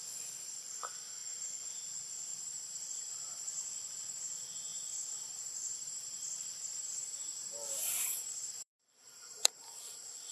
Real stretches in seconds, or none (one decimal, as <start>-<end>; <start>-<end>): 0.0-2.3; 3.0-4.7; 9.6-10.3